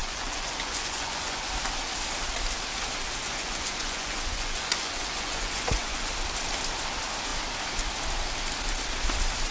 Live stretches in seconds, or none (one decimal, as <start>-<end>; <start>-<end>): 1.5-3.3; 6.1-9.5